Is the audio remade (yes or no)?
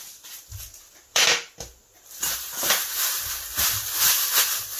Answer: no